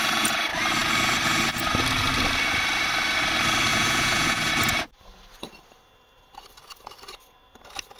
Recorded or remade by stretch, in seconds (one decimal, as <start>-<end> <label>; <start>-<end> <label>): 0.0-3.7 recorded; 3.7-4.5 remade; 4.5-8.0 recorded